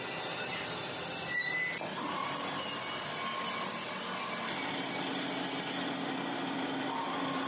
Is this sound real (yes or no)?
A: yes